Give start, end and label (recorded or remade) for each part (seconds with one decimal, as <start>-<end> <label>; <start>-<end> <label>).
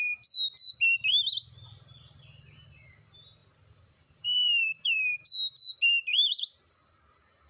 0.0-3.4 recorded; 3.4-5.3 remade; 5.3-6.1 recorded; 6.1-6.7 remade; 6.7-7.5 recorded